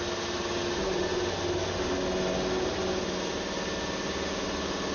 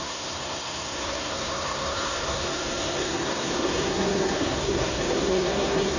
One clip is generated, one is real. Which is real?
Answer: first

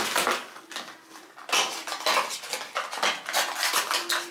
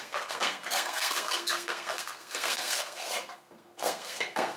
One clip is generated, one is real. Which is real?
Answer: first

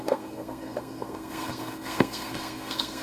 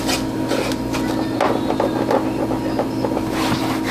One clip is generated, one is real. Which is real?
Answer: second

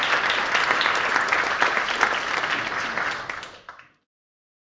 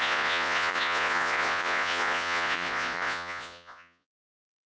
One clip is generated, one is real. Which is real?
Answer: first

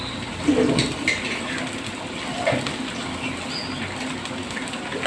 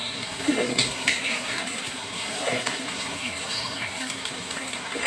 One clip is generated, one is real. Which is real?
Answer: first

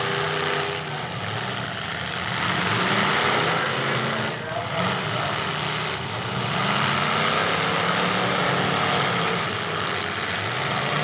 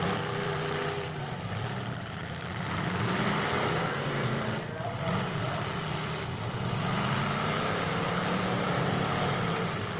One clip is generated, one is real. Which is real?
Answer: first